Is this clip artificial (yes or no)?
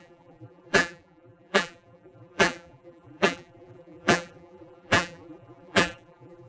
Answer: yes